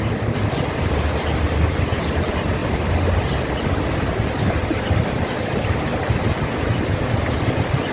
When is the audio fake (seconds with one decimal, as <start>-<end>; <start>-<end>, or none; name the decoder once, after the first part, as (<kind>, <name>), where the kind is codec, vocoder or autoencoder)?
none